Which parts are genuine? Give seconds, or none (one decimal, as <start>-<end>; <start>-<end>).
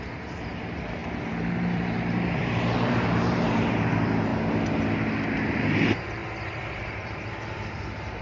4.3-5.5; 6.2-6.8